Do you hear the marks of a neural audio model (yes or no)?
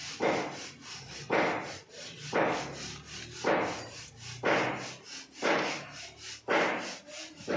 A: no